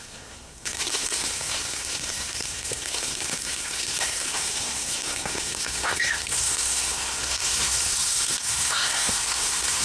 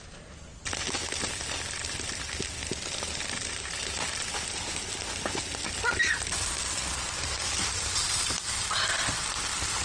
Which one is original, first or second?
second